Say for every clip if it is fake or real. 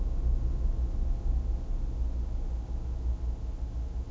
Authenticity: real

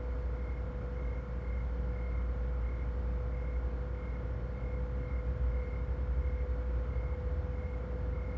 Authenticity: real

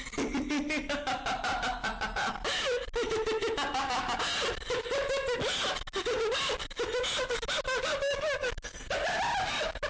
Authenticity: real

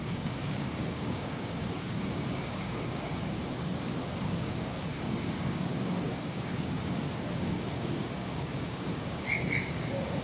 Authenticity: fake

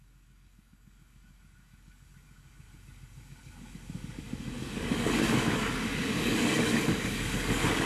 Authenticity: fake